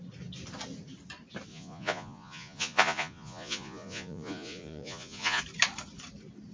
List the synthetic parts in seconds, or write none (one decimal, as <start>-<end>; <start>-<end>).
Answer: 1.5-5.4